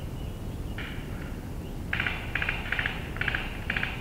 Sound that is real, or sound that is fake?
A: real